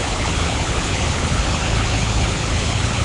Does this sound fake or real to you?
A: fake